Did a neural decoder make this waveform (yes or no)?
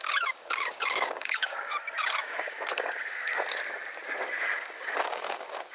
yes